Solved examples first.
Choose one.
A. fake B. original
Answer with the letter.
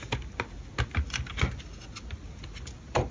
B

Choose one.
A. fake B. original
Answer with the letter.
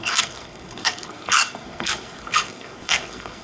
A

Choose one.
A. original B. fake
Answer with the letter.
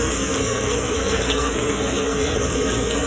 B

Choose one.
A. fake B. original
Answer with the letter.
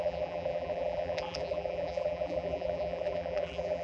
A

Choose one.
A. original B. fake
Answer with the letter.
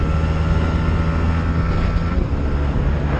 A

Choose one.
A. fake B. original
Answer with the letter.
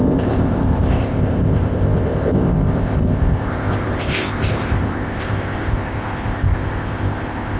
A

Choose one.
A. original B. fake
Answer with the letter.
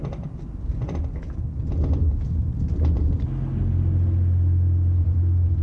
A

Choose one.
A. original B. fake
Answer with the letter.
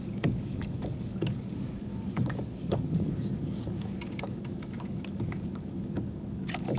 B